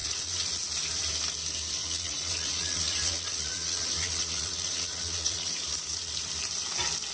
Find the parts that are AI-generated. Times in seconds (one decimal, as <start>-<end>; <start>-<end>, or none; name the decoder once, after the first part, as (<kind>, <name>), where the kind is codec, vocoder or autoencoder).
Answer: 0.0-0.6 (vocoder, Vocos); 1.8-6.1